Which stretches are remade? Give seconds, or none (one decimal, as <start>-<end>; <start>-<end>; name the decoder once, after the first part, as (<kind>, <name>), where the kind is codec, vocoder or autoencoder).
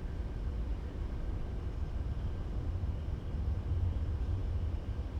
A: 0.7-1.4 (vocoder, BigVGAN v2)